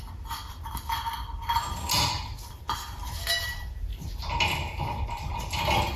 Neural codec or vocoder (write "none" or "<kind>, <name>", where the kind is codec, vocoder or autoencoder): none